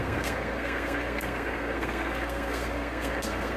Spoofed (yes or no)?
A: yes